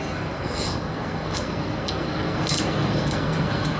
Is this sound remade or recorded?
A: remade